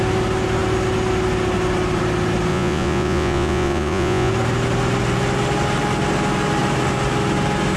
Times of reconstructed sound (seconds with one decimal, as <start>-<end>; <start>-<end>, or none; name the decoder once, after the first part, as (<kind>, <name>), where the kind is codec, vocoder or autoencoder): 2.5-4.3 (vocoder, Vocos)